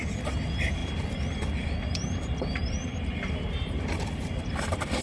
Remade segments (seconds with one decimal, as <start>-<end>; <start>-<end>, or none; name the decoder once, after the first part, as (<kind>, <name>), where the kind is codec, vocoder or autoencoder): 0.0-5.0 (vocoder, BigVGAN v2)